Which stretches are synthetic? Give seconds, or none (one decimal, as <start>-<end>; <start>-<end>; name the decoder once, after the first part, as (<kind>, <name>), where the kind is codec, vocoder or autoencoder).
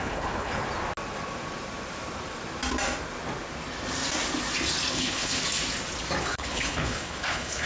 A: 0.0-0.6 (codec, HILCodec); 4.9-5.4; 6.2-7.7